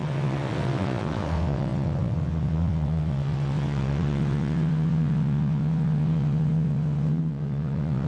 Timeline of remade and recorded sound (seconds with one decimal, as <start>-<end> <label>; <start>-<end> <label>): 0.0-8.1 remade